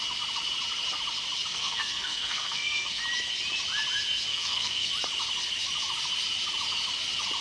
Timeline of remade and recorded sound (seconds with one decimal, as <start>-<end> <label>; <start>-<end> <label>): 0.0-1.5 recorded; 1.5-3.0 remade; 3.0-4.3 recorded; 4.3-4.9 remade; 4.9-7.4 recorded